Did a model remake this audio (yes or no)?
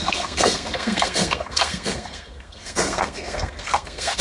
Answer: yes